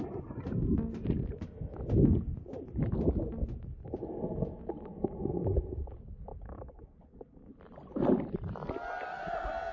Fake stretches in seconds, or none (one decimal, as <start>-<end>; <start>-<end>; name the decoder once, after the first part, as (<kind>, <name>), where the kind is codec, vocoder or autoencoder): 6.3-7.5 (codec, DAC)